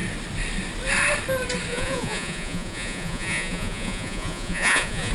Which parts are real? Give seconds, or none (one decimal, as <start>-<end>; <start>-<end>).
0.0-1.7